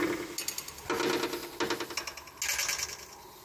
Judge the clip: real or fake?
real